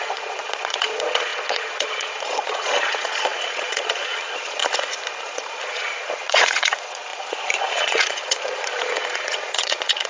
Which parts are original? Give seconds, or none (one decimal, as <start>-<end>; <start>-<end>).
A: 4.6-5.2